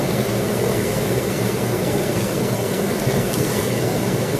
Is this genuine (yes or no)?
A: no